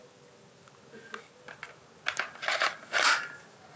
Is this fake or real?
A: real